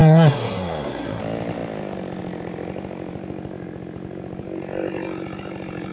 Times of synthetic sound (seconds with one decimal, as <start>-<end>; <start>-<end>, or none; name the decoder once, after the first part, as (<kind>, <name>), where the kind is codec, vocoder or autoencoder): 0.0-1.2 (codec, SNAC)